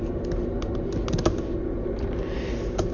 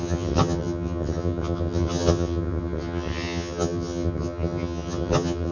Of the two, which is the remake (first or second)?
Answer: second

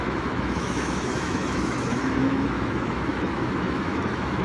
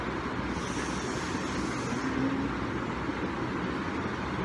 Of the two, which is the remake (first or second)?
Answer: first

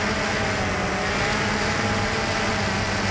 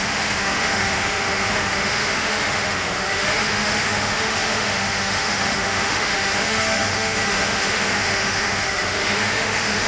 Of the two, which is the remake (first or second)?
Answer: second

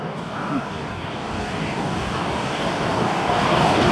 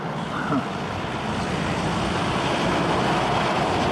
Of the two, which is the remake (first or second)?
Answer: first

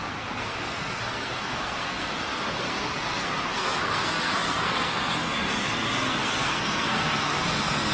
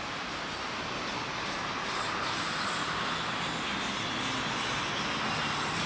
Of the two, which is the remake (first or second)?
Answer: first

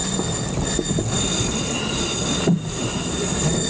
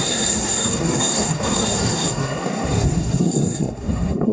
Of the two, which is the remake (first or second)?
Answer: second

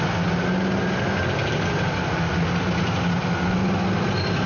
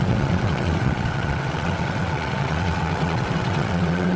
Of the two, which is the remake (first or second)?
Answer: second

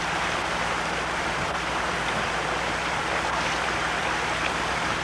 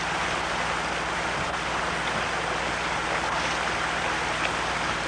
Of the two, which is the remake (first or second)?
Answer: first